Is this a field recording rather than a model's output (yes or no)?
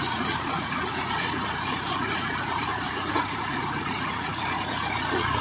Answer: no